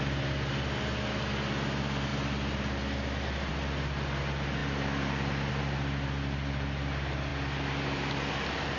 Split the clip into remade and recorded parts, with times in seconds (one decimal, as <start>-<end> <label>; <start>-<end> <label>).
0.0-8.8 recorded